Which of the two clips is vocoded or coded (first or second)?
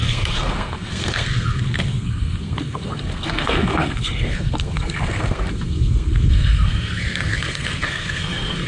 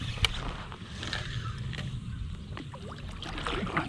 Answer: first